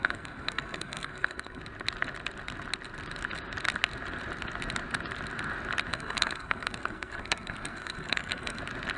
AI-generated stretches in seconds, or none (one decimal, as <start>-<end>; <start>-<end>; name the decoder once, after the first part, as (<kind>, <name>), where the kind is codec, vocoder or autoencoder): 0.0-1.6 (codec, SNAC); 5.9-8.6